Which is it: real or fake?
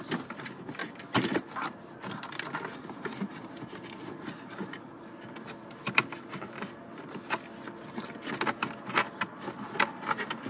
real